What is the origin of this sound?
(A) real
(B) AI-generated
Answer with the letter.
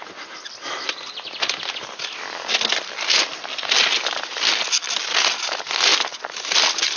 A